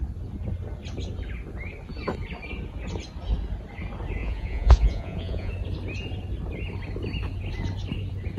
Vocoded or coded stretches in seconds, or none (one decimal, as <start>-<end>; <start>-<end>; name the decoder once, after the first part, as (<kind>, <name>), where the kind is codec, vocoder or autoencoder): 4.2-5.5 (vocoder, Vocos)